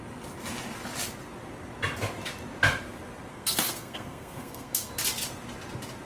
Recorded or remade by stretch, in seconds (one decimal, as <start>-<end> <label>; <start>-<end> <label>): 0.0-3.3 recorded; 3.3-4.9 remade; 4.9-6.0 recorded